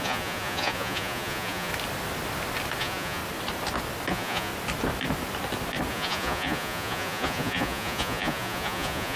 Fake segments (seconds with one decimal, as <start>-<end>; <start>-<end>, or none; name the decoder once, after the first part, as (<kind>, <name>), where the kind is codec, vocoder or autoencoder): 0.0-1.7 (vocoder, Vocos); 2.8-3.2; 4.1-4.5; 5.9-9.2